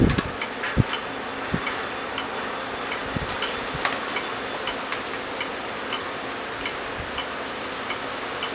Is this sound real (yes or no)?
yes